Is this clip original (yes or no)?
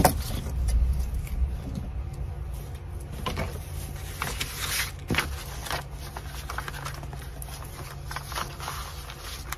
yes